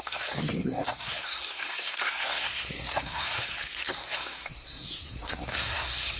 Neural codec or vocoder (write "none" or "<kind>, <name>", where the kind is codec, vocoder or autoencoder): codec, SNAC